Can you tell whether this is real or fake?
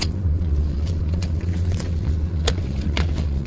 fake